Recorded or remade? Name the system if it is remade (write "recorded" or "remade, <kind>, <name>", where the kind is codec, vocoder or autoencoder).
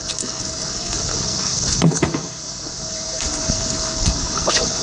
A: remade, codec, SNAC